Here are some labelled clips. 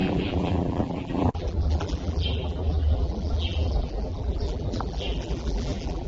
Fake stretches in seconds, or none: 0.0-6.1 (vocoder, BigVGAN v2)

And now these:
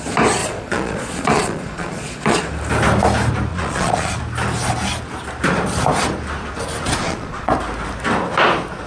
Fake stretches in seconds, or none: 0.4-2.4 (vocoder, Vocos); 3.5-4.2; 7.0-7.5